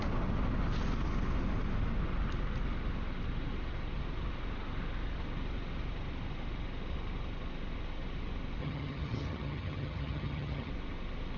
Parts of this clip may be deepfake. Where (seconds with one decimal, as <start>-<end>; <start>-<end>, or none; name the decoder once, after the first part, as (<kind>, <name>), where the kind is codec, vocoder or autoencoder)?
8.6-10.7 (vocoder, HiFi-GAN)